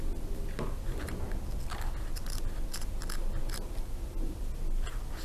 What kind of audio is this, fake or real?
real